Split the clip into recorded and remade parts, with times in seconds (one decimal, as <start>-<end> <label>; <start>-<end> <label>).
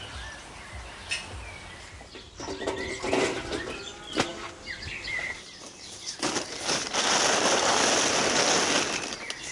0.0-9.5 recorded